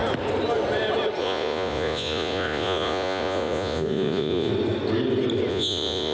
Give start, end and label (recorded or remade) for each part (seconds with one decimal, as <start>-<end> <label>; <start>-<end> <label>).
0.0-1.2 recorded; 1.2-4.5 remade; 4.5-5.5 recorded; 5.5-6.1 remade